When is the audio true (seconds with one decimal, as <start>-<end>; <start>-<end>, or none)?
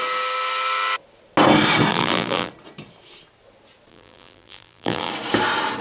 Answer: 0.0-1.9; 2.5-3.9; 5.1-5.8